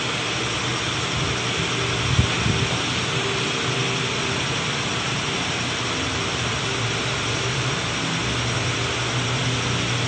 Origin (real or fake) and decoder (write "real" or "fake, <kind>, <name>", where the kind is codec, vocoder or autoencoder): real